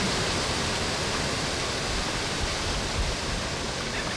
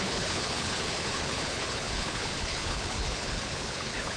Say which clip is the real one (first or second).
first